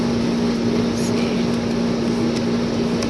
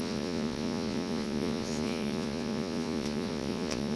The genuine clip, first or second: first